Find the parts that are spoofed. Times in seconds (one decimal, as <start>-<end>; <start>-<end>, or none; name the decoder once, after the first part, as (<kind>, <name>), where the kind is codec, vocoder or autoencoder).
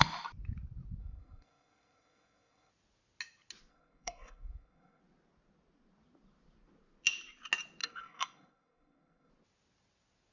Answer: 1.0-2.7 (codec, SNAC); 3.7-5.0; 7.8-9.3